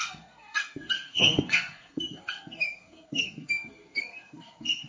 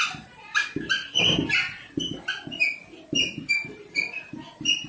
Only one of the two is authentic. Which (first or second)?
second